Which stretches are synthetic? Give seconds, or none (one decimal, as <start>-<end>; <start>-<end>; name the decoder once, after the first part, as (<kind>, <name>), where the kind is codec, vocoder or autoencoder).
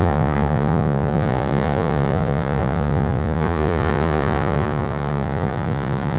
0.0-6.2 (vocoder, Vocos)